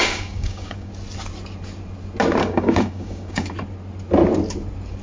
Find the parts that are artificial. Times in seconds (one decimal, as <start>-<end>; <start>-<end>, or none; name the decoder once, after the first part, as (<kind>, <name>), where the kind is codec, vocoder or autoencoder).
0.0-0.9 (codec, DAC); 2.4-3.5